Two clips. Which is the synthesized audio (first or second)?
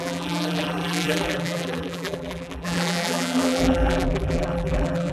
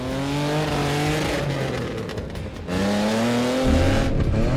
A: first